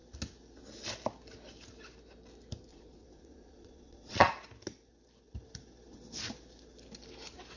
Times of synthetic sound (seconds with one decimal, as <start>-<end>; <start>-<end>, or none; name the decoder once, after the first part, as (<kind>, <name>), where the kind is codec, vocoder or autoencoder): 2.7-4.3 (vocoder, Vocos)